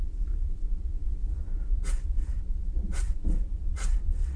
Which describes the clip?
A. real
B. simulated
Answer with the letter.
B